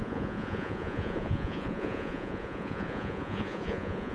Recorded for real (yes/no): no